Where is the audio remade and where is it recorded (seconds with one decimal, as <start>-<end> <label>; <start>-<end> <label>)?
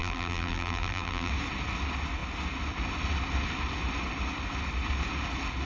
0.0-1.3 remade; 1.3-5.6 recorded